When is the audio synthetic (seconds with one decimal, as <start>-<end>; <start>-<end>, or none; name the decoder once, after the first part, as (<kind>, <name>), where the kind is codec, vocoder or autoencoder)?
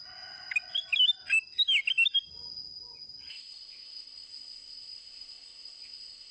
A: 3.3-6.3 (codec, ZipCodec)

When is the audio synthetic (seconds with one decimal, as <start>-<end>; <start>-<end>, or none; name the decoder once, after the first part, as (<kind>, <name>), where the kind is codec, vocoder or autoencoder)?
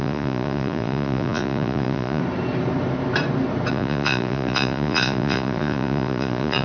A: 0.0-2.2 (vocoder, Vocos); 3.7-6.6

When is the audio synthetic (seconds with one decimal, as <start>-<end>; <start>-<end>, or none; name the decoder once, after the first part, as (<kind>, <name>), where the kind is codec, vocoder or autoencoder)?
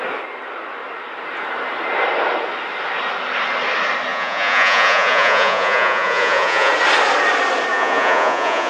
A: 4.1-6.7 (vocoder, Vocos); 7.7-8.7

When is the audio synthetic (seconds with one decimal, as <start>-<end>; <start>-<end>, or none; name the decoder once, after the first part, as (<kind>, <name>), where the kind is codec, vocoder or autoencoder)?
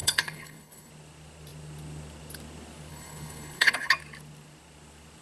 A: 0.0-0.9 (codec, HILCodec); 2.9-3.9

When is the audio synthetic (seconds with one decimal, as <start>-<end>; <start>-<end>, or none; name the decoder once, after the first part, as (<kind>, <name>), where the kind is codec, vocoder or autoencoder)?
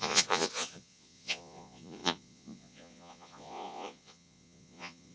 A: 0.0-5.1 (vocoder, Vocos)